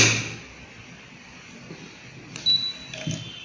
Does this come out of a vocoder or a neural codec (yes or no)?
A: no